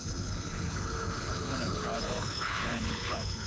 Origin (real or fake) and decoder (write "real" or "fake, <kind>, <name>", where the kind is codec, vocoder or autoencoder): fake, codec, HILCodec